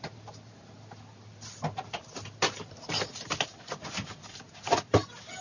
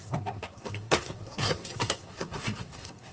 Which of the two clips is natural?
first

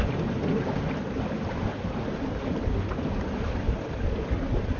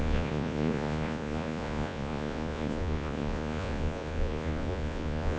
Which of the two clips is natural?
first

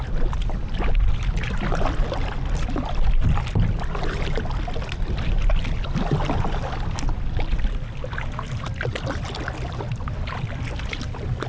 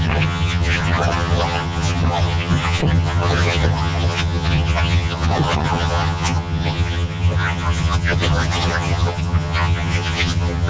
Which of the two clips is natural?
first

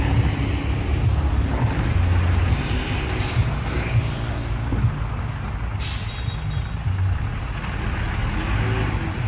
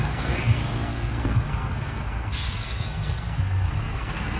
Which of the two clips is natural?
first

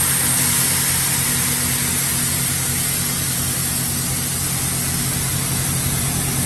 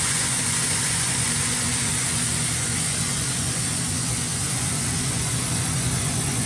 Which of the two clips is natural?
first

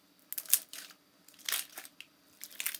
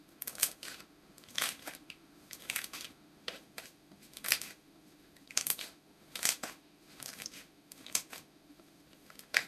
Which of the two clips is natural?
first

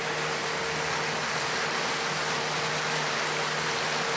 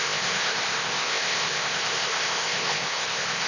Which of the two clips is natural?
first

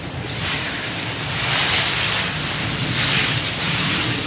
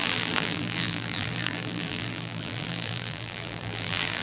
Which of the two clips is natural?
first